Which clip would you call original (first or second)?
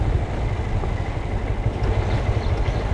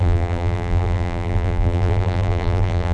first